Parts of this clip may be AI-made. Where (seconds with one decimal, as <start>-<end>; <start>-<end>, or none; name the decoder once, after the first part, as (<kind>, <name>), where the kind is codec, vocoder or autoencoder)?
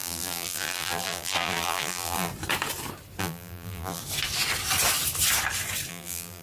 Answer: 0.0-2.3 (vocoder, BigVGAN v2); 3.2-4.0; 5.9-6.4